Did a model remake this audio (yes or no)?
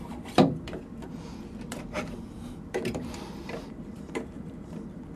yes